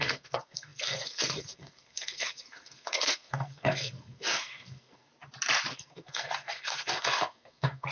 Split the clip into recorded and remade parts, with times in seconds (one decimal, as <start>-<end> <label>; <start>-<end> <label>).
0.0-5.1 remade; 5.1-5.7 recorded; 5.7-7.9 remade